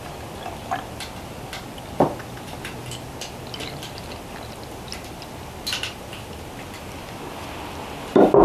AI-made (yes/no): no